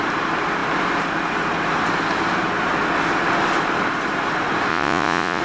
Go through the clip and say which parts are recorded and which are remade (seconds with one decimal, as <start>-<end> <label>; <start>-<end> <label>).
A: 0.0-4.7 recorded; 4.7-5.4 remade